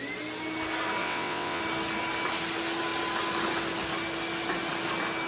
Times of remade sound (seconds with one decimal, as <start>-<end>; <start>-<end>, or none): 1.0-1.6